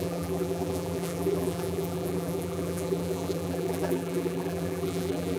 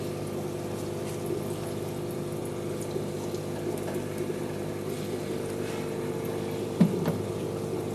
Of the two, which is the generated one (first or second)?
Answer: first